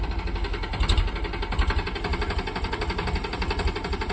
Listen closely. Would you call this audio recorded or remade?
recorded